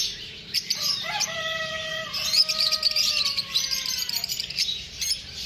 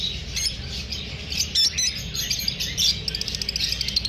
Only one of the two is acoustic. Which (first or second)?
second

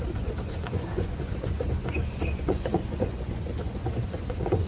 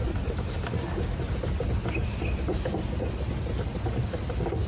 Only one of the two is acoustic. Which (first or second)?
second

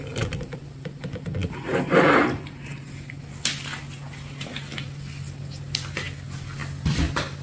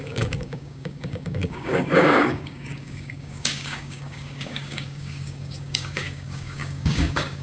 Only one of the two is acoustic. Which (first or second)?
first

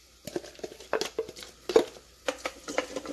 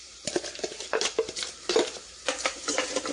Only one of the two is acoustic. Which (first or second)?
first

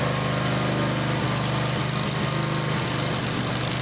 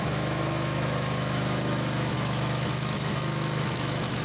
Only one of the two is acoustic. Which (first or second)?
first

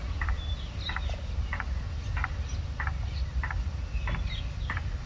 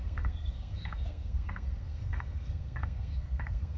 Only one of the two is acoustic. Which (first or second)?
first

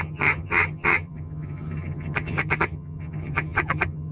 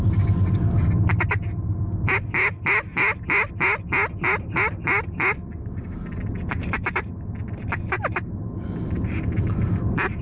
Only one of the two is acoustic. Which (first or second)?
second